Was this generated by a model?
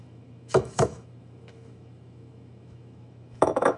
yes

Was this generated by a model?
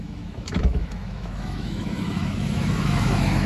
yes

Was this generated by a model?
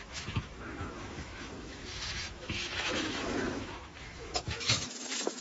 yes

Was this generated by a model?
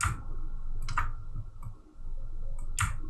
no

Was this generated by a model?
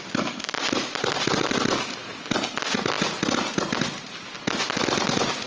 no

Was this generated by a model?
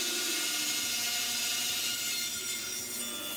no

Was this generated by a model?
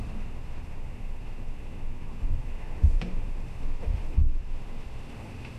yes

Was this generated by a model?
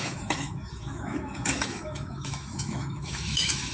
yes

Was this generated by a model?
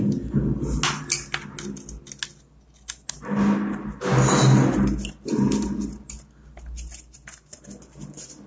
no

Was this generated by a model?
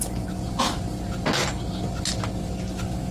no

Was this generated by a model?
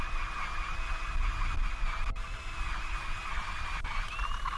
no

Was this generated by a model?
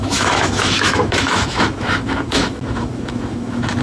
yes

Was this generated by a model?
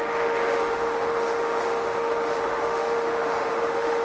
yes